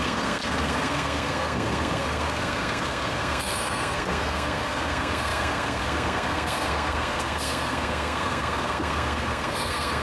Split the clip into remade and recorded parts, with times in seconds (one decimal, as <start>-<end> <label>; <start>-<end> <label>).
0.0-10.0 remade